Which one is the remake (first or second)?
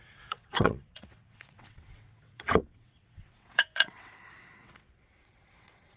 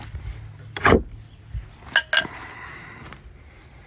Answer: first